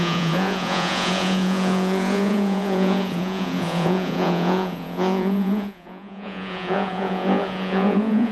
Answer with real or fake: fake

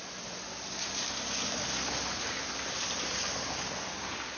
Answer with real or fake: real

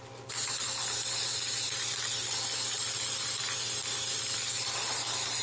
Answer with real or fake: real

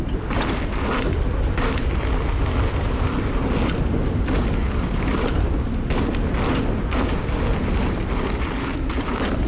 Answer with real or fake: real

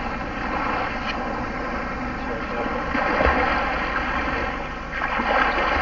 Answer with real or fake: real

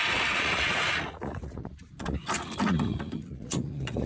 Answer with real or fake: fake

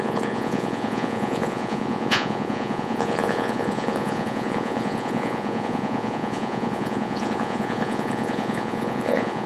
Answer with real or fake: fake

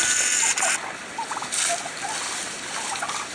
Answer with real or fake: real